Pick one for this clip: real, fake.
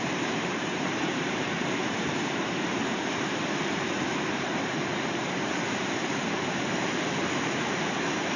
fake